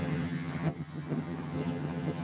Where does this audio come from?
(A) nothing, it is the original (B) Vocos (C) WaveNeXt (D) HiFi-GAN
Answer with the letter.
D